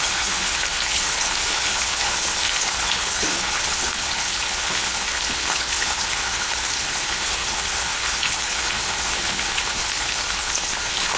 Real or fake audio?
fake